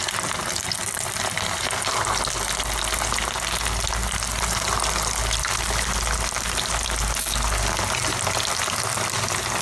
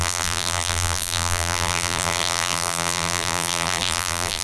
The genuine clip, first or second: first